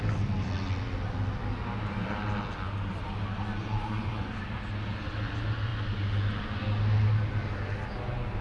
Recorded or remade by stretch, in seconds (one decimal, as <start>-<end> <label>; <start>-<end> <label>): 0.0-3.6 recorded; 3.6-4.3 remade; 4.3-8.4 recorded